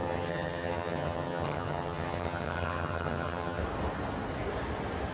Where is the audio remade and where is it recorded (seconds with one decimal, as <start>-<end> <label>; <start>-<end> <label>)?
0.0-3.6 remade; 3.6-5.1 recorded